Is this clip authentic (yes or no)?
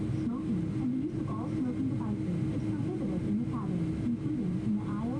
yes